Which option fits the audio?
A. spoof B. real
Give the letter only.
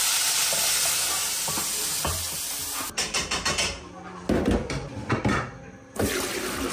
B